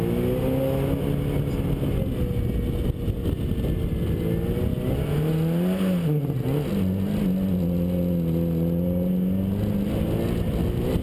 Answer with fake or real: real